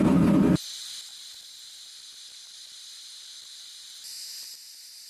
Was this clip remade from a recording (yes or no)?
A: no